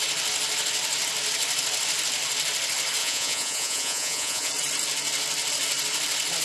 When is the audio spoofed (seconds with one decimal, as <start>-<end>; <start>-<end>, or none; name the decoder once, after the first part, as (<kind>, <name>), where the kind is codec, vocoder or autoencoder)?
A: 3.0-4.5 (vocoder, Vocos)